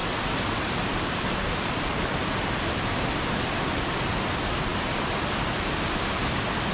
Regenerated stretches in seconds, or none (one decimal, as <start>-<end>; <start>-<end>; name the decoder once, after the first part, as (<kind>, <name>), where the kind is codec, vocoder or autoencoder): none